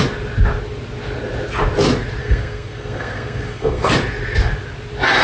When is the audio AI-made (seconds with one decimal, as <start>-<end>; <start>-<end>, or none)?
2.2-3.9